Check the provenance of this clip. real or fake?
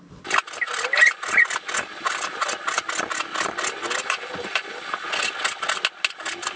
real